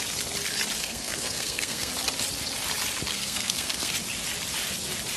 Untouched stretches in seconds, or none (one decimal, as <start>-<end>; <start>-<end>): 0.0-0.8; 1.9-3.1; 3.9-5.2